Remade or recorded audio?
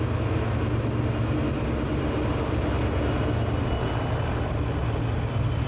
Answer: recorded